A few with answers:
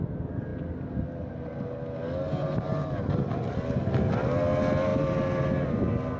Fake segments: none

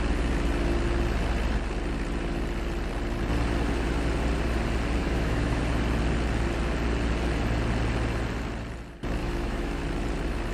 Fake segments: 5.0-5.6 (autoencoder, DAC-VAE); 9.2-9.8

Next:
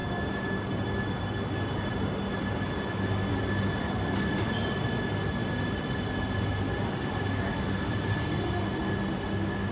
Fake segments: none

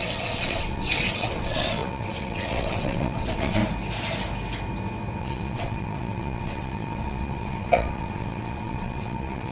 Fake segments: 0.0-3.6 (vocoder, WaveNeXt); 5.2-9.5

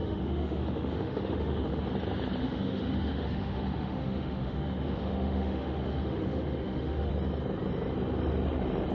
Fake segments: 0.0-1.8 (autoencoder, DAC-VAE); 2.4-7.1